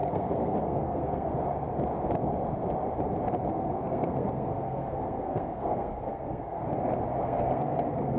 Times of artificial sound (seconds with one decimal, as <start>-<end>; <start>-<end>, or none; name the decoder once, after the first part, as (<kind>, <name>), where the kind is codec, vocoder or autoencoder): 0.0-1.3 (codec, SNAC); 3.5-6.6; 7.2-8.2